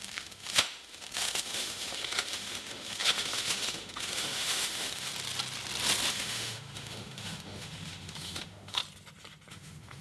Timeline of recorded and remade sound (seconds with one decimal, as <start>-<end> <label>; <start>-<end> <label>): 0.0-5.1 remade; 5.1-6.1 recorded; 6.1-8.8 remade; 8.8-9.5 recorded; 9.5-10.0 remade